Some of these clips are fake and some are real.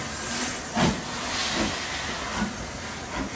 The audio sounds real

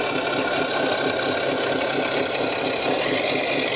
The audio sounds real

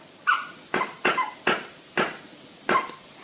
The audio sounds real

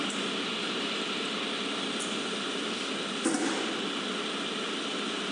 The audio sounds real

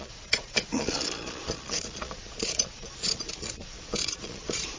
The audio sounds fake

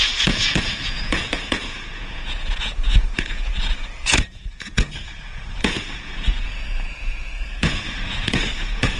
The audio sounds fake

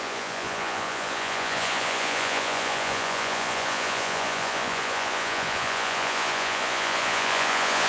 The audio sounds fake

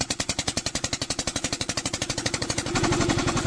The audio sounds fake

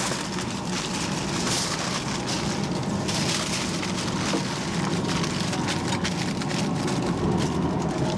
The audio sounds real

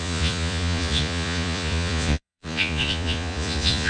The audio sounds fake